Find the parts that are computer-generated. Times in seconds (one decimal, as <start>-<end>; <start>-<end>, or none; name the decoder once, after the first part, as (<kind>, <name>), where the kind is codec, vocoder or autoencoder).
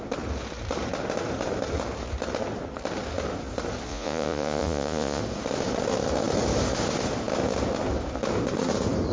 3.9-5.2 (vocoder, Vocos)